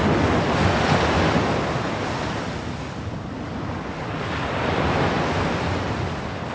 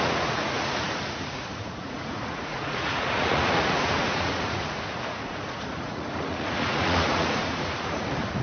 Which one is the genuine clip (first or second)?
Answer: first